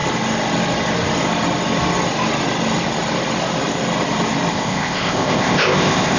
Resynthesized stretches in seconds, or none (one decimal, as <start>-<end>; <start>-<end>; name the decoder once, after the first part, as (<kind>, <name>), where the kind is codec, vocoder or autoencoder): 4.5-6.2 (codec, ZipCodec)